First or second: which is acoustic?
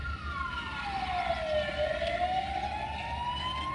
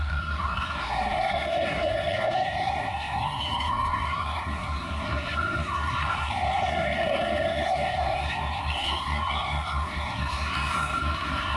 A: first